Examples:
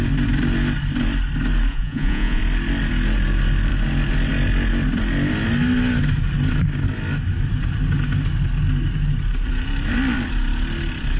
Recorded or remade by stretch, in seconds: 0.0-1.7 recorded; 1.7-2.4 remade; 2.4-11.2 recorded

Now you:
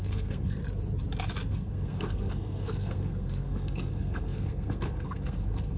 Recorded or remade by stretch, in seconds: 0.0-0.6 remade; 0.6-1.5 recorded; 1.5-5.8 remade

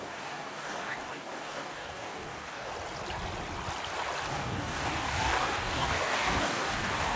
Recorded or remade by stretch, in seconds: 0.0-2.7 remade; 2.7-4.3 recorded; 4.3-7.2 remade

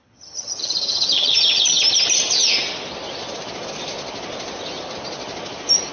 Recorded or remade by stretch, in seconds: 0.0-1.8 remade; 1.8-5.9 recorded

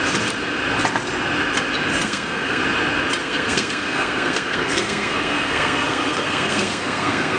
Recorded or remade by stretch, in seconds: 0.0-1.9 recorded; 1.9-2.6 remade; 2.6-3.2 recorded; 3.2-7.4 remade